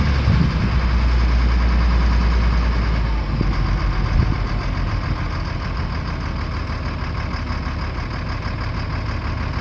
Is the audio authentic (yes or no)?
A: yes